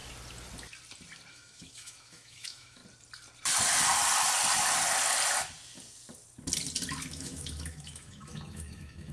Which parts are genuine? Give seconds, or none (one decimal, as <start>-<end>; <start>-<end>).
0.0-1.3; 2.8-7.1